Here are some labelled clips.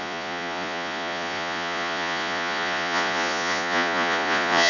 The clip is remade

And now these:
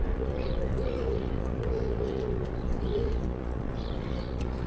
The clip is remade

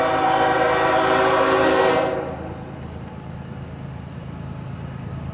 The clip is recorded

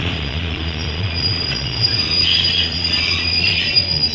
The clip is remade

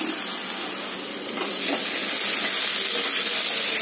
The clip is recorded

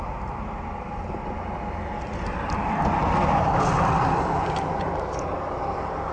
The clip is recorded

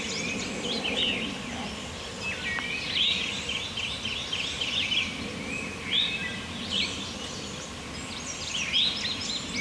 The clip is recorded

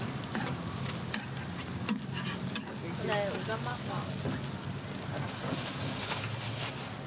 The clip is recorded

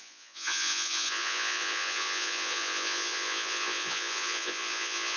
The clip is remade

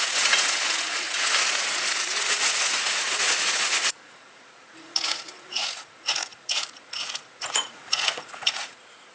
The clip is remade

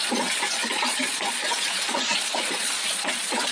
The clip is remade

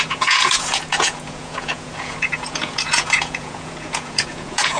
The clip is remade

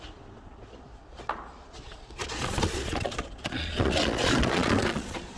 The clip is remade